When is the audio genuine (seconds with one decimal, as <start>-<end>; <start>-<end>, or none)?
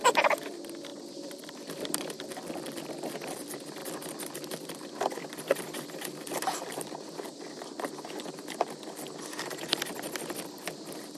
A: 0.0-0.9; 2.8-3.8; 7.4-11.2